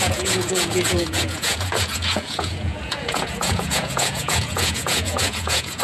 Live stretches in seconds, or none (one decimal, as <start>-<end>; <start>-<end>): none